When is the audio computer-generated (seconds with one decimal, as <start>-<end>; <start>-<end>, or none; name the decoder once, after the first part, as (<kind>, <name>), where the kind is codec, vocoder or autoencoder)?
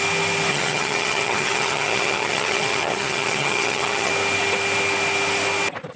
0.5-4.1 (vocoder, HiFi-GAN)